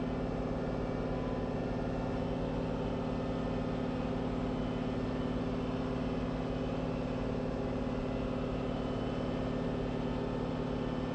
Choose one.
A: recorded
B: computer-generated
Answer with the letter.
A